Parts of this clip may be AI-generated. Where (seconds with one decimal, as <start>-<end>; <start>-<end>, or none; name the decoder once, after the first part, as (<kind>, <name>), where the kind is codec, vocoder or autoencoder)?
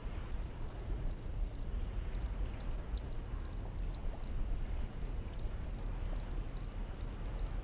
0.0-3.2 (vocoder, Vocos); 4.0-5.7